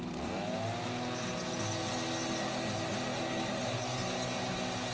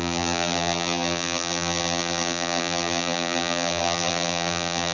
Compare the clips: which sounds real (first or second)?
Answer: first